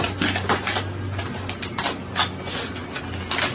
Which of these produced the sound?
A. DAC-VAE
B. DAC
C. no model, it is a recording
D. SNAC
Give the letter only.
C